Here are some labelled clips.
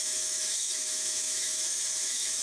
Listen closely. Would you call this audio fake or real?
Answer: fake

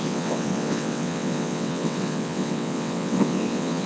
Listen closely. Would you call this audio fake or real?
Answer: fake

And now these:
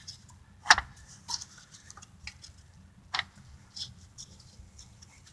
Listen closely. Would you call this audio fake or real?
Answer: real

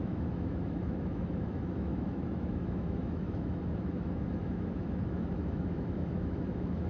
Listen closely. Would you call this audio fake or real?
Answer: fake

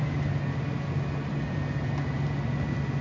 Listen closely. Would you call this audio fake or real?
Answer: real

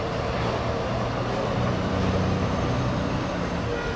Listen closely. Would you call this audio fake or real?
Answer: real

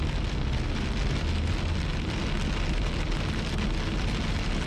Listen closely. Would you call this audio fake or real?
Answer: real